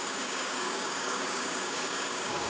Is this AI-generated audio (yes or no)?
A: yes